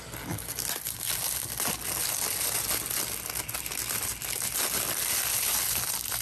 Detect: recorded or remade recorded